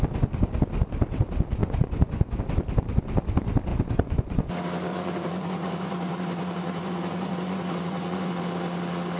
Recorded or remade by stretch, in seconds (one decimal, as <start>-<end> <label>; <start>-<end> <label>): 0.0-1.6 recorded; 1.6-2.4 remade; 2.4-3.7 recorded; 3.7-4.5 remade; 4.5-4.9 recorded; 4.9-8.3 remade; 8.3-9.2 recorded